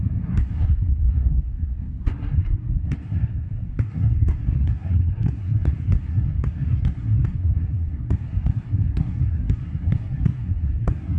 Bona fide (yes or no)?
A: no